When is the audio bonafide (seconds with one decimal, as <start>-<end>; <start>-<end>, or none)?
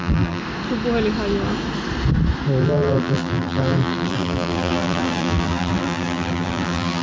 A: 0.4-2.6